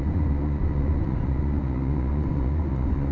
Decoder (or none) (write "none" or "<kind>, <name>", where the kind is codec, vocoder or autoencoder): vocoder, Vocos